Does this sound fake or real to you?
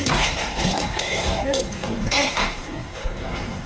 fake